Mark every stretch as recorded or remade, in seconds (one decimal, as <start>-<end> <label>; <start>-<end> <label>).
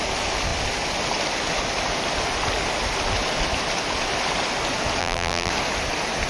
0.0-5.0 recorded; 5.0-5.5 remade; 5.5-6.3 recorded